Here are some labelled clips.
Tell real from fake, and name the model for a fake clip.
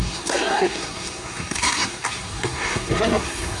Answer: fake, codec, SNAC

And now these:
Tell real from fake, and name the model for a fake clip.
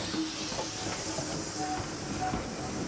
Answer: real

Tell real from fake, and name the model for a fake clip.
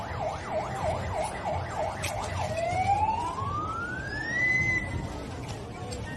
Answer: real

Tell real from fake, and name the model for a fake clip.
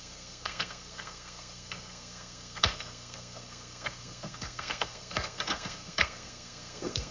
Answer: fake, codec, SNAC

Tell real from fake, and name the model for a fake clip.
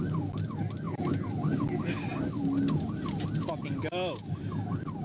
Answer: real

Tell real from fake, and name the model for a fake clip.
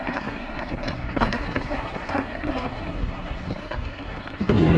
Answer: fake, codec, SNAC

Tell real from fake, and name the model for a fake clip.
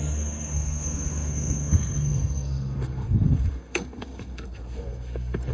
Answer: fake, codec, SNAC